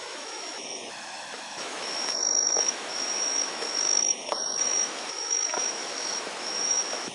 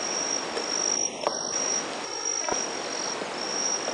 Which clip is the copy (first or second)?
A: first